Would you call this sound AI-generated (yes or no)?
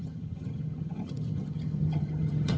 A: yes